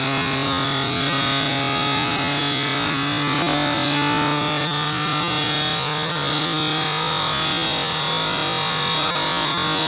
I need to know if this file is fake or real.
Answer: real